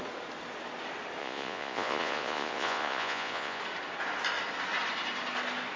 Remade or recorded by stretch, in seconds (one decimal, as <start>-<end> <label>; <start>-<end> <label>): 0.0-1.2 recorded; 1.2-3.6 remade; 3.6-5.8 recorded